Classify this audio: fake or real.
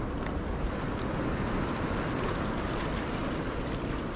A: real